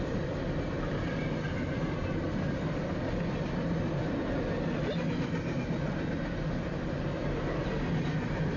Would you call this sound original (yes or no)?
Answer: yes